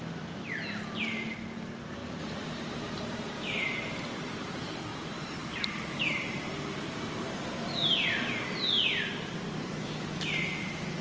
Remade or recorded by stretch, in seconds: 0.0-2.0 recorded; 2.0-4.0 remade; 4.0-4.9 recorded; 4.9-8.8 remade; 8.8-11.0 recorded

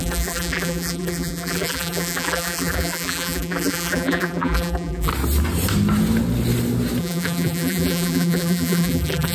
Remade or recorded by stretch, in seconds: 0.0-5.1 remade; 5.1-7.0 recorded; 7.0-9.3 remade

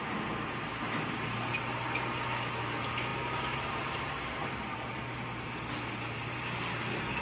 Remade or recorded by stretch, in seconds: 0.0-3.1 recorded; 3.1-5.0 remade; 5.0-7.2 recorded

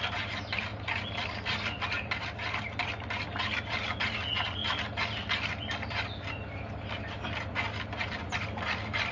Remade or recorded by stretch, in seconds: 0.0-9.1 recorded

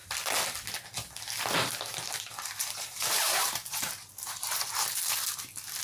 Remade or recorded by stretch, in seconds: 0.0-1.6 recorded; 1.6-5.1 remade; 5.1-5.8 recorded

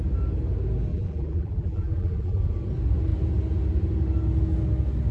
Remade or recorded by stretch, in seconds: 0.0-0.9 recorded; 0.9-2.4 remade; 2.4-5.1 recorded